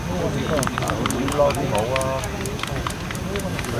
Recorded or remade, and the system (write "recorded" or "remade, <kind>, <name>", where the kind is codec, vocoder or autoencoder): remade, vocoder, BigVGAN v2